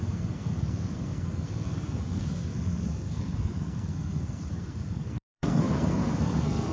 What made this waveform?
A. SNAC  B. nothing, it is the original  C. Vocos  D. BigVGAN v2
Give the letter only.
A